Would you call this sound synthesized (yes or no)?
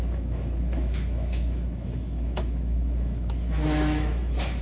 yes